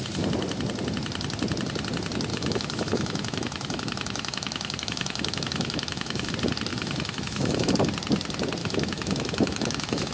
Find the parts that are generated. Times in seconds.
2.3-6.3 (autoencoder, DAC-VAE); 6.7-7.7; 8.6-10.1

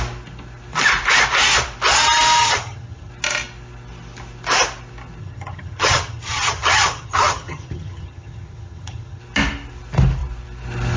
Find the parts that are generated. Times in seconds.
2.4-3.1 (vocoder, HiFi-GAN); 5.2-9.2

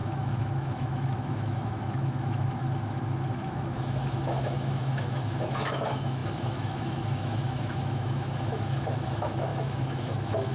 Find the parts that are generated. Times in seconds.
0.0-10.5 (autoencoder, DAC-VAE)

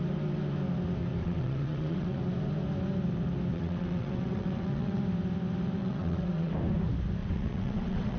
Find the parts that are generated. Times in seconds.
1.2-2.2 (vocoder, WaveNeXt); 3.5-5.0; 5.8-6.5; 7.2-8.2